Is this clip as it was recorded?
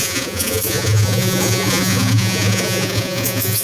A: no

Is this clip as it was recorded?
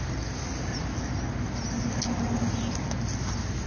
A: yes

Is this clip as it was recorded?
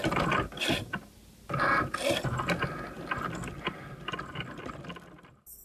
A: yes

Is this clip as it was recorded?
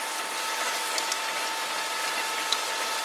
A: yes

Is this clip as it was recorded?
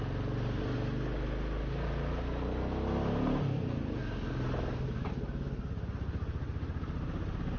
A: yes